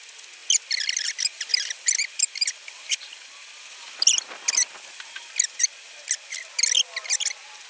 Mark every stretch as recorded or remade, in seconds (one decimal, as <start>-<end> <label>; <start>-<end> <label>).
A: 0.0-0.4 recorded; 0.4-1.1 remade; 1.1-1.5 recorded; 1.5-4.4 remade; 4.4-7.7 recorded